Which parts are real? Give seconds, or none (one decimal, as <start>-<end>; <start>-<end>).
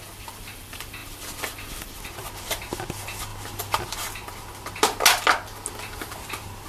0.0-6.7